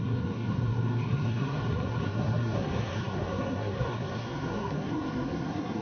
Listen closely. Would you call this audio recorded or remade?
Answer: remade